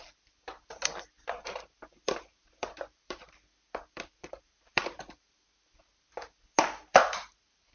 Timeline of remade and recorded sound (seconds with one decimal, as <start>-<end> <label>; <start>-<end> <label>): 0.0-2.4 recorded; 2.4-6.1 remade; 6.1-7.7 recorded